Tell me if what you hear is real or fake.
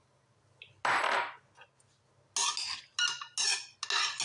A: real